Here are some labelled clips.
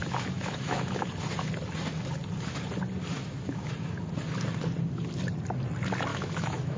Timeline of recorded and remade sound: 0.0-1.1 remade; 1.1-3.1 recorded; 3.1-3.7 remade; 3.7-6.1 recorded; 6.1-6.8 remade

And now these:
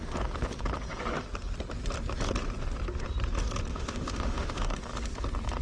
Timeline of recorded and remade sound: 0.0-3.7 recorded; 3.7-4.7 remade; 4.7-5.6 recorded